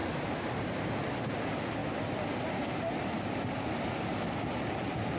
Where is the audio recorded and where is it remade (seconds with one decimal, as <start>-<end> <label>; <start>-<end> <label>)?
0.0-0.9 remade; 0.9-1.8 recorded; 1.8-3.9 remade; 3.9-5.2 recorded